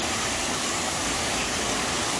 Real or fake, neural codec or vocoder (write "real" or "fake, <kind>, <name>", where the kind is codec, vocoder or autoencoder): fake, codec, DAC